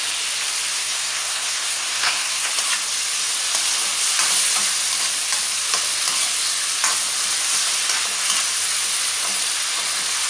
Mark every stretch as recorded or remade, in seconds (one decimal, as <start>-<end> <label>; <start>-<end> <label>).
0.0-0.7 recorded; 0.7-2.5 remade; 2.5-10.3 recorded